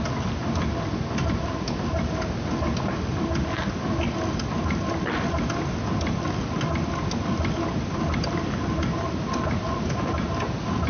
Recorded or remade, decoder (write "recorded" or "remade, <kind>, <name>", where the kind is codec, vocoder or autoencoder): recorded